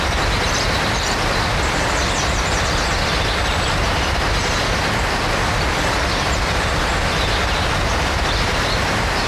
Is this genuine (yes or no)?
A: yes